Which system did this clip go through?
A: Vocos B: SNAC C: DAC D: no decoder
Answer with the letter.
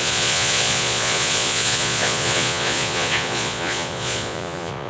A